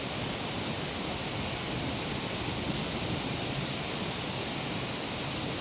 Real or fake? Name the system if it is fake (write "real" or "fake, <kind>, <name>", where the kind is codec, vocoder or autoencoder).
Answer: real